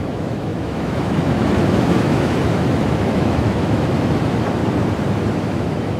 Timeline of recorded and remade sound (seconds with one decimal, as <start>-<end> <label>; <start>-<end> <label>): 0.0-4.6 remade; 4.6-5.3 recorded; 5.3-6.0 remade